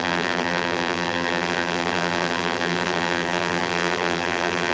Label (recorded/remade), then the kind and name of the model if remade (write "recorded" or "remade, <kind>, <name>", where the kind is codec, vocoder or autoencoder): remade, vocoder, BigVGAN v2